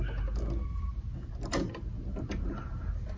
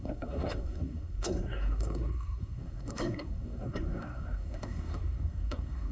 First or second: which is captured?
first